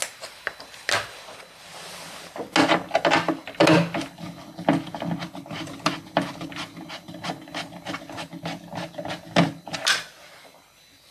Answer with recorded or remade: recorded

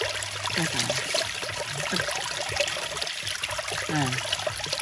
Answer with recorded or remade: recorded